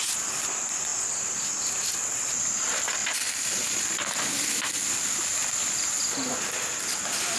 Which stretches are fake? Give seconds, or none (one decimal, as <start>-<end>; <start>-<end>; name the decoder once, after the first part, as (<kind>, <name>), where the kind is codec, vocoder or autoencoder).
none